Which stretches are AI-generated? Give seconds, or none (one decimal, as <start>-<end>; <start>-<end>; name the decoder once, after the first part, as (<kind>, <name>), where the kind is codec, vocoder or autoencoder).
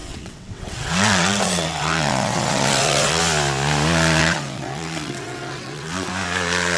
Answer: 0.0-3.2 (vocoder, WaveNeXt); 4.2-6.1